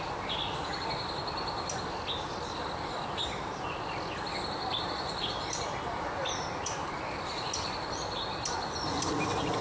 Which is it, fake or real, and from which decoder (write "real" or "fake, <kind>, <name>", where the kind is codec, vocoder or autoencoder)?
real